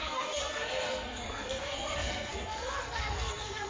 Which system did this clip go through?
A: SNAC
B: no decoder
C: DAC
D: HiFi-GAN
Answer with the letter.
A